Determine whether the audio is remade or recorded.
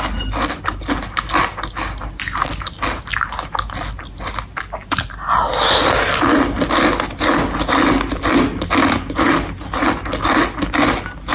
recorded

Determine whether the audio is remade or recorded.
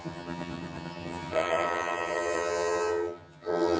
remade